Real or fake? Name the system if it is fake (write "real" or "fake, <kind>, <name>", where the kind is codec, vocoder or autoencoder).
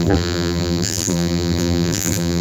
fake, vocoder, BigVGAN v2